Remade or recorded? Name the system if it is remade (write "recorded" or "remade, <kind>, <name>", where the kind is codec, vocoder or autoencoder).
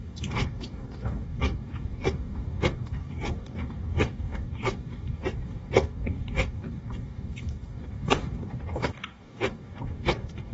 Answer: remade, codec, DAC